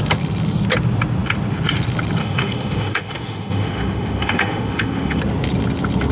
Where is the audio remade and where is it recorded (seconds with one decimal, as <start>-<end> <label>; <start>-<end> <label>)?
0.0-2.2 recorded; 2.2-5.2 remade; 5.2-6.1 recorded